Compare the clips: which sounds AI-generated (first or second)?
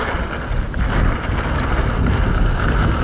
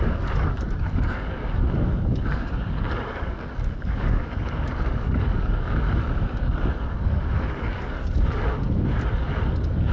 second